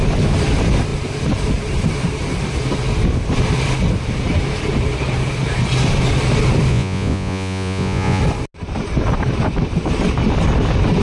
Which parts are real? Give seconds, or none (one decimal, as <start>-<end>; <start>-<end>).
0.0-6.7; 8.2-11.0